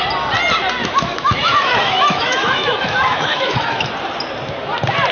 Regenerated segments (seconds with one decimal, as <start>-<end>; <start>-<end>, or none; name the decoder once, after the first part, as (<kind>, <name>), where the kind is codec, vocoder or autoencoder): 0.8-3.9 (autoencoder, DAC-VAE)